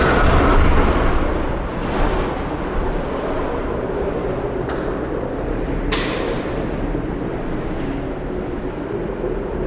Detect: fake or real real